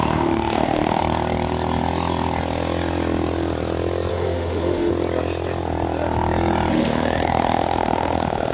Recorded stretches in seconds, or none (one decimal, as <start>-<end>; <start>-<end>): 1.0-4.1; 4.9-6.7